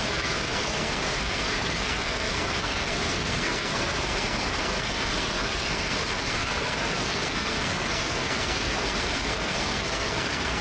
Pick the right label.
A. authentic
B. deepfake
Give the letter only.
B